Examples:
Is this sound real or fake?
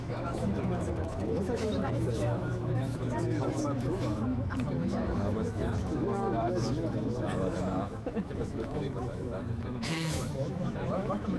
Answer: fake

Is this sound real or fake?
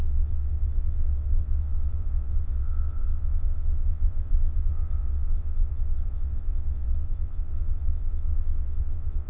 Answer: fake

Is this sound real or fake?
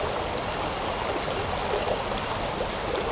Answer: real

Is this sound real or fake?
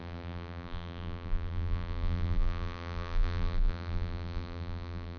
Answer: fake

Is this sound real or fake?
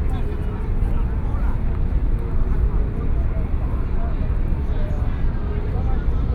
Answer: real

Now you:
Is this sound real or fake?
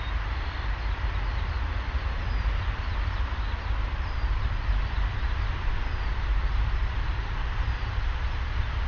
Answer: real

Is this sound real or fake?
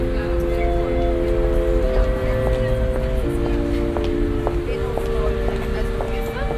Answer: real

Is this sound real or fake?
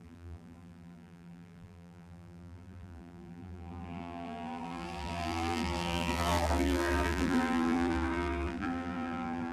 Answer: fake